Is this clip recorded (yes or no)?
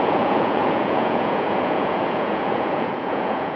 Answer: no